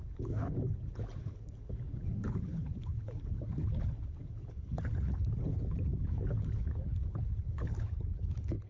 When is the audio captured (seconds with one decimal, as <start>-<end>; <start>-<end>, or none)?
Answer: none